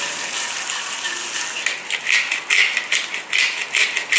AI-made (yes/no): no